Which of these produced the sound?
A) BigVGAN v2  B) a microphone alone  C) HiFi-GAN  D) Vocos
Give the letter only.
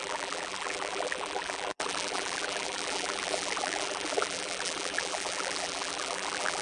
A